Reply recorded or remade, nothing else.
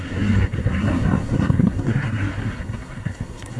remade